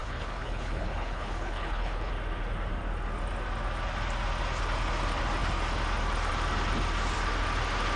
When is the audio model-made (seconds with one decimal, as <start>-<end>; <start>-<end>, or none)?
0.0-2.1